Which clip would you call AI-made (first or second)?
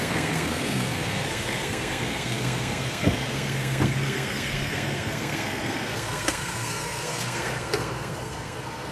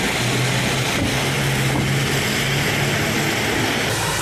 first